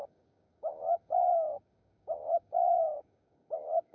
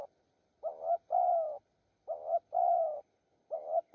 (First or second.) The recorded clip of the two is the second